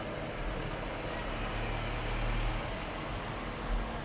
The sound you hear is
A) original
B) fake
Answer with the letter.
A